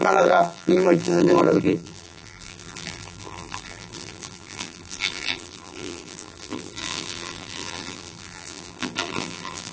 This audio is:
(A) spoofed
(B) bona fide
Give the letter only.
A